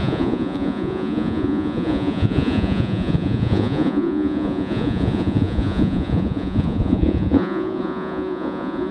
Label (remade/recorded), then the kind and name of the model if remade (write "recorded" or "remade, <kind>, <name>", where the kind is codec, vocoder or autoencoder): remade, vocoder, Vocos